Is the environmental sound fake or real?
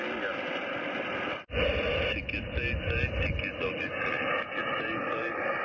real